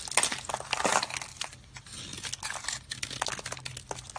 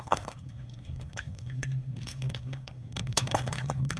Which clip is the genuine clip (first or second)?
first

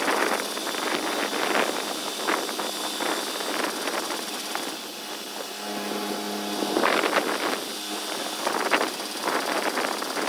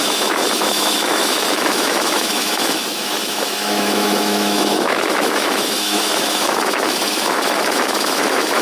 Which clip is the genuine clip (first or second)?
first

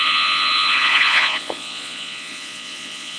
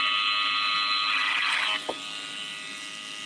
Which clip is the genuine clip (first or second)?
second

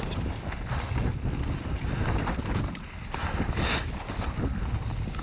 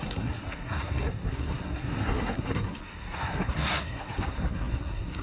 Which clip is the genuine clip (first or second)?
first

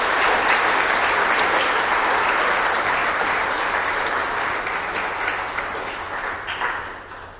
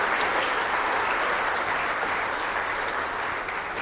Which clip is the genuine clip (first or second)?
first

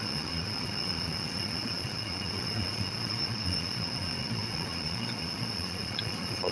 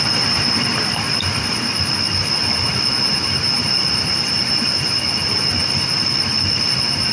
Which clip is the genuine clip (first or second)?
second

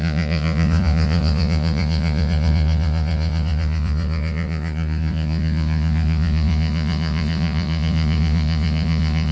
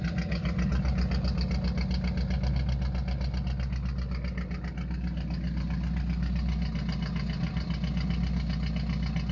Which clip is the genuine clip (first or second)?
second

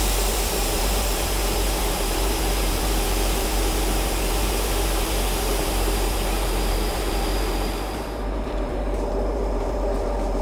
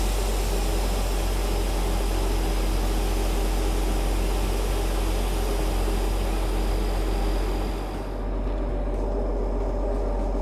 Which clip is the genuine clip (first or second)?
second